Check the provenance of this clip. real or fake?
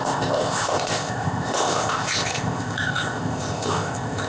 fake